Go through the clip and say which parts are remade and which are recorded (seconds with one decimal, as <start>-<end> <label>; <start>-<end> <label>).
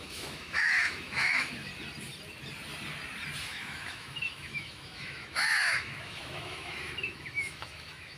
0.0-1.7 remade; 1.7-3.4 recorded; 3.4-8.2 remade